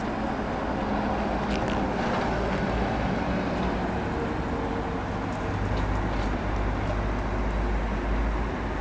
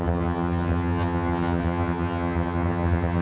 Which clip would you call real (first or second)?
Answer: first